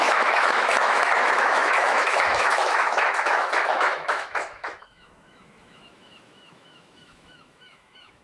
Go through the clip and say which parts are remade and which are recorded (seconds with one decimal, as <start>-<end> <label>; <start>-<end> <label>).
0.0-8.2 remade